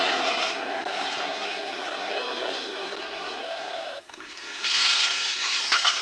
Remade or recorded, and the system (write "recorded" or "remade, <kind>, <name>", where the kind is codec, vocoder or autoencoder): remade, codec, SNAC